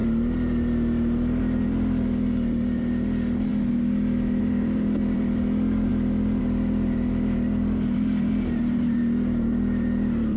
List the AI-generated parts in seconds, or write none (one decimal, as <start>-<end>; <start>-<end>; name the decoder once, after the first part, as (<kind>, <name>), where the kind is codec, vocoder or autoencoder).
1.4-3.5 (vocoder, BigVGAN v2); 4.4-5.9; 6.4-10.4